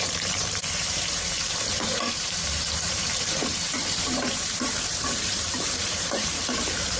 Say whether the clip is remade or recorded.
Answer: remade